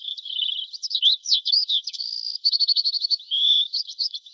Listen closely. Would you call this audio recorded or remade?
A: remade